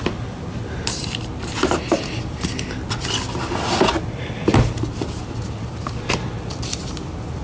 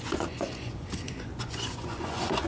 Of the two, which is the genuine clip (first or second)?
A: first